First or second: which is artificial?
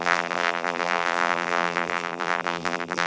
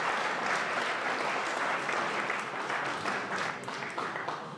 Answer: first